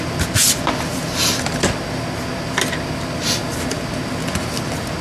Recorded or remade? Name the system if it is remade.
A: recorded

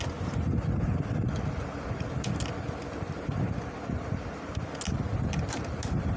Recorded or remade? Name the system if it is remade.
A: recorded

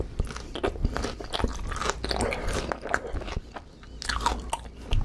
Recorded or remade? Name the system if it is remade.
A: recorded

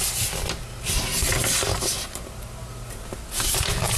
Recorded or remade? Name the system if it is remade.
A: recorded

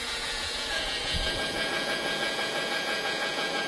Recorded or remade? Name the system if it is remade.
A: remade, vocoder, Vocos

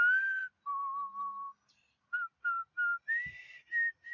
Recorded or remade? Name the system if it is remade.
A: recorded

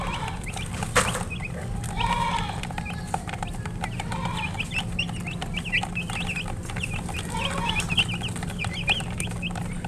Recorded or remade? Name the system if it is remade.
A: recorded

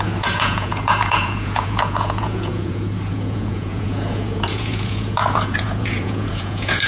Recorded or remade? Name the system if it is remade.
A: remade, vocoder, Vocos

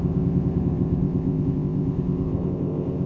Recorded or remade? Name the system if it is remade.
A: remade, codec, ZipCodec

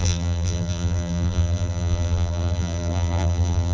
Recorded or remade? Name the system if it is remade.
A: remade, vocoder, BigVGAN v2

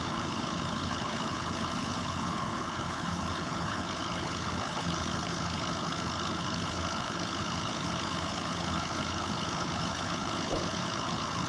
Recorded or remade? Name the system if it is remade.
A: remade, codec, HILCodec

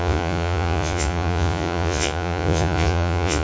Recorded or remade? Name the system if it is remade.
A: remade, vocoder, Vocos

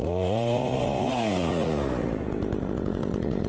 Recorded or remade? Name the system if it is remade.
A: remade, vocoder, Vocos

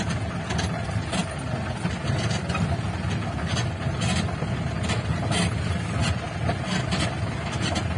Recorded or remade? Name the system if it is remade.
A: recorded